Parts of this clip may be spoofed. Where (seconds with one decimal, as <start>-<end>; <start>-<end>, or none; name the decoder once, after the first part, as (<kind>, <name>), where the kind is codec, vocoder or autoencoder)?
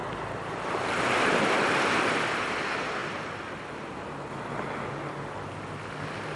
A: 0.0-1.0 (vocoder, BigVGAN v2)